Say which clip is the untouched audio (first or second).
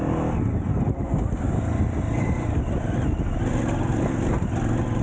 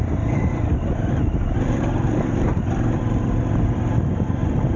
first